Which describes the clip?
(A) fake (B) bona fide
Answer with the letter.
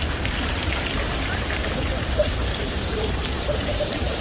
A